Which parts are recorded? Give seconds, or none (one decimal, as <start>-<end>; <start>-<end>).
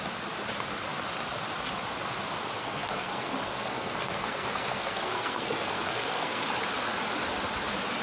0.0-2.6; 6.5-8.0